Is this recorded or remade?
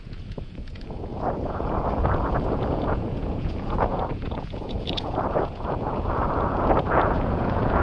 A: remade